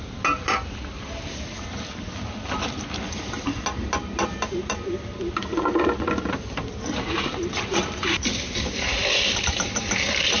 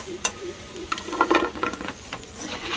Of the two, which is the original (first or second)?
first